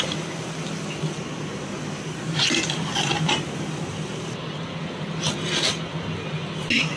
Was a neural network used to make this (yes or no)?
no